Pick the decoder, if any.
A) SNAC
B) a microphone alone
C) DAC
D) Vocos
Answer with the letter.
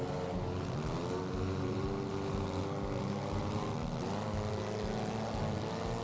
B